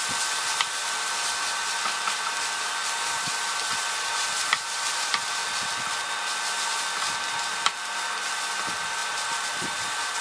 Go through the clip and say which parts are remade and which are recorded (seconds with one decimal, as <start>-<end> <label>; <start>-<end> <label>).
0.0-2.8 recorded; 2.8-4.9 remade; 4.9-9.0 recorded; 9.0-10.2 remade